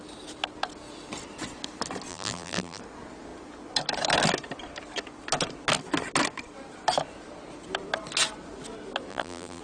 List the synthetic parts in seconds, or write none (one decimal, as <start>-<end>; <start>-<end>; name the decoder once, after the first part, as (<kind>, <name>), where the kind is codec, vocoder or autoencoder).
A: 2.1-2.8 (vocoder, BigVGAN v2); 9.1-9.6